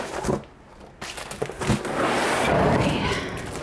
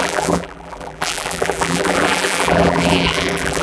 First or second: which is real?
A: first